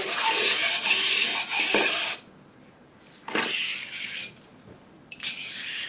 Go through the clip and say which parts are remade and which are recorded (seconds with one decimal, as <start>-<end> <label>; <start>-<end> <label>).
0.0-5.9 recorded